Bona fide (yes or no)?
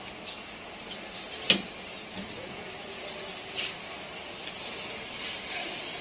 yes